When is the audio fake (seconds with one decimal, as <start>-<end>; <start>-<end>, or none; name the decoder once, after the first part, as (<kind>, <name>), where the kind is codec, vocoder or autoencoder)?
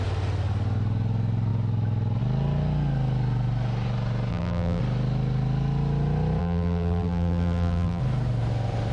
4.3-4.8 (vocoder, BigVGAN v2); 6.4-8.0